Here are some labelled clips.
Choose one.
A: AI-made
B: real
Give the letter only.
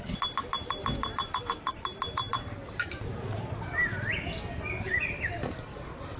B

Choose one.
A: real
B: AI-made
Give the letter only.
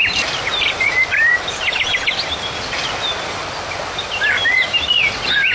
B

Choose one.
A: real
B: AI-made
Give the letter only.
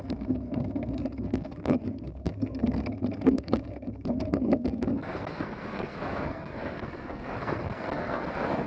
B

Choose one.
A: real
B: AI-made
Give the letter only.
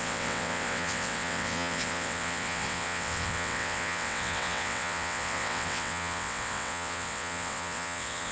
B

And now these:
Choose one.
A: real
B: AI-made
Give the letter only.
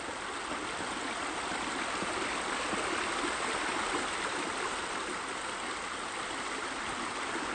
A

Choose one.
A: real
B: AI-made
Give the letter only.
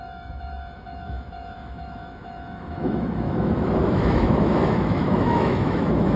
B